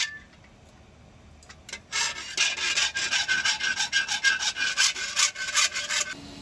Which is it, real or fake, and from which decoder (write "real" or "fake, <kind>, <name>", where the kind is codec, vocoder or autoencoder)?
real